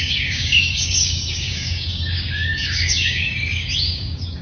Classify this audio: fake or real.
fake